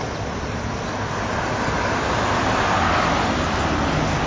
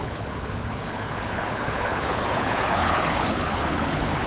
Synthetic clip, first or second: second